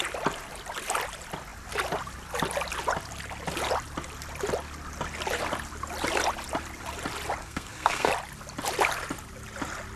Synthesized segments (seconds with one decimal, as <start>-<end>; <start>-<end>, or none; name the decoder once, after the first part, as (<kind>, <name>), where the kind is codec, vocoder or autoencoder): 7.4-8.1 (codec, SNAC)